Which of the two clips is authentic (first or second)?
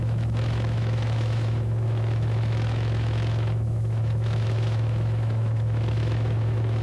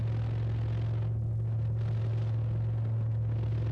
second